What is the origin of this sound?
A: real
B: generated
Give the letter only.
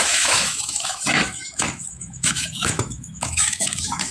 B